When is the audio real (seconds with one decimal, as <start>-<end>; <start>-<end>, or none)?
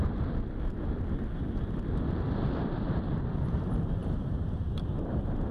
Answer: 0.0-3.3